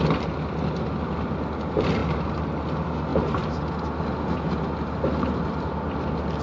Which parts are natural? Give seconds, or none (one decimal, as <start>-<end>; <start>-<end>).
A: 0.0-6.4

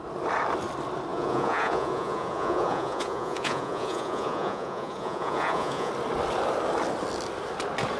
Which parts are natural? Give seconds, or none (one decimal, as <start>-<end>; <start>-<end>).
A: 0.0-1.1; 5.9-8.0

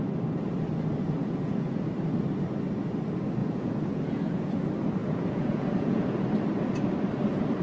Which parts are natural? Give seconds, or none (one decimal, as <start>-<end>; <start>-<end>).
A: 0.0-1.2; 1.8-3.4; 4.6-5.0; 6.2-7.6

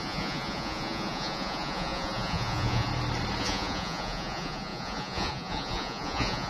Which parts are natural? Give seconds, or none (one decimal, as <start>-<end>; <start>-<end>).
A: 2.9-3.4

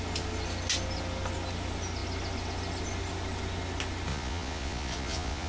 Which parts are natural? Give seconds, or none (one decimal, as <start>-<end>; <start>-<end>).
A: 0.0-4.1

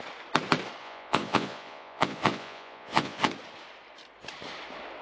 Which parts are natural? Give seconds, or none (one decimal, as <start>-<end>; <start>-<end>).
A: 0.0-0.8; 3.3-5.0

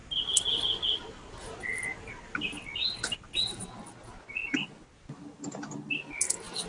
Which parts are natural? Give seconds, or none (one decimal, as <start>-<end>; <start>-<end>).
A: 0.0-6.7

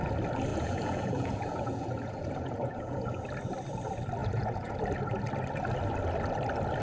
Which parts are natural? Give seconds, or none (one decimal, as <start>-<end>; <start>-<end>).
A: 0.0-0.5; 3.2-4.2; 4.8-6.8